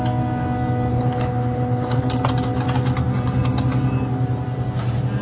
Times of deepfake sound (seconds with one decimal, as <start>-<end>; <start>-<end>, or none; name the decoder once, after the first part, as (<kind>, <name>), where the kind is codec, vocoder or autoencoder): 0.9-2.0 (codec, HILCodec)